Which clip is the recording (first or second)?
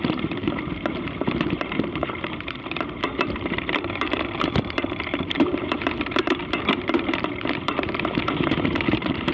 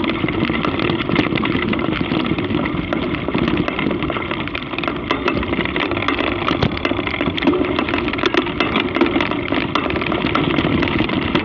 second